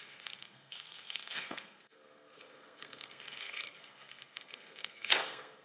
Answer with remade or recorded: remade